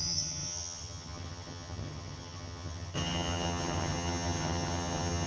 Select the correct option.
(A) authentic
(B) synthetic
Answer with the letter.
B